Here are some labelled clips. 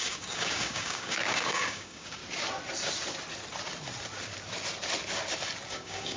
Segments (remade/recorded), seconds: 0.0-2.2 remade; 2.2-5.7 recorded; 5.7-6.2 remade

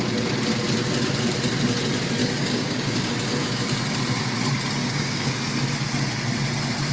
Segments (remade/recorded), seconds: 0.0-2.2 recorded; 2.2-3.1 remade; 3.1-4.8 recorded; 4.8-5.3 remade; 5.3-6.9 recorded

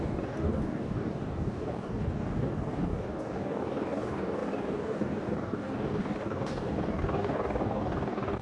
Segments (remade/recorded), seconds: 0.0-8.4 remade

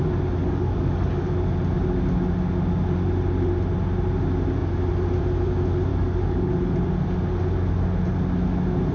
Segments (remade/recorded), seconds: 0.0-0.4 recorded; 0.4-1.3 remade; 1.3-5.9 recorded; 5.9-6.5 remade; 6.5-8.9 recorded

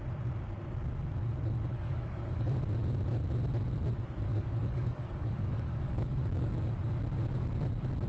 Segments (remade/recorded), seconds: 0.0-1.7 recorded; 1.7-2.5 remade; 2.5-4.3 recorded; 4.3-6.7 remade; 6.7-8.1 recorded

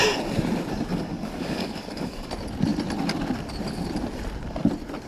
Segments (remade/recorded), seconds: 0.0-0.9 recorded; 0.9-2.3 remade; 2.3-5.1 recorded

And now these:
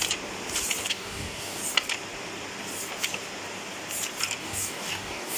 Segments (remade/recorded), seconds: 0.0-0.9 recorded; 0.9-1.6 remade; 1.6-4.4 recorded; 4.4-5.4 remade

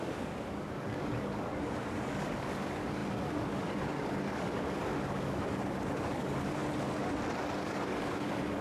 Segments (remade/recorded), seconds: 0.0-6.6 remade; 6.6-7.6 recorded; 7.6-8.6 remade